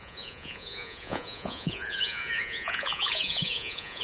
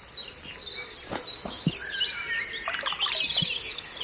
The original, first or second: second